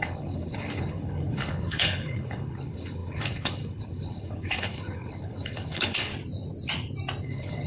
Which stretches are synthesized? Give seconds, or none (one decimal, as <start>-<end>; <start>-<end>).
0.0-6.1; 7.2-7.7